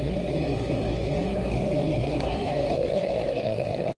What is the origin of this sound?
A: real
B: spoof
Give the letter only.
B